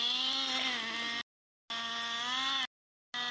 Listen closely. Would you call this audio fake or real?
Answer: real